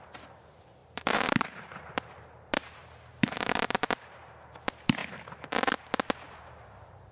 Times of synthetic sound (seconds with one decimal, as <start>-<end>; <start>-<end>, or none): 0.0-5.0